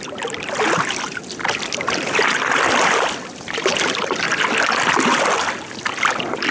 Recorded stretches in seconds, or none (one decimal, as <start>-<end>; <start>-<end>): 0.0-6.5